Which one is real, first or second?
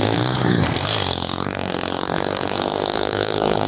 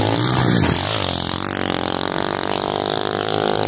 second